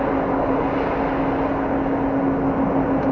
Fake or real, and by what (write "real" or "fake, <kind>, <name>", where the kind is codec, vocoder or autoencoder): real